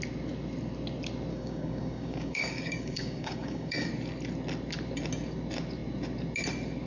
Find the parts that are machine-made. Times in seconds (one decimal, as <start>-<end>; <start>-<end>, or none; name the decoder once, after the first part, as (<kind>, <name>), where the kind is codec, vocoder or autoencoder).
1.3-3.9 (codec, DAC)